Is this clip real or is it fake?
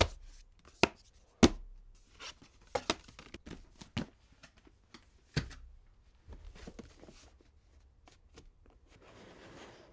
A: real